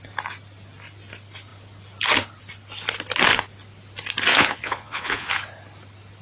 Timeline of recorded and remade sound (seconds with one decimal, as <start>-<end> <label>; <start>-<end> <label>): 0.0-4.3 recorded; 4.3-5.3 remade; 5.3-6.2 recorded